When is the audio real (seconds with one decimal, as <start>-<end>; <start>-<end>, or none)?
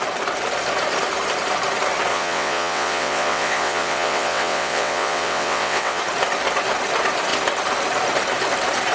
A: 0.0-2.1; 6.0-8.9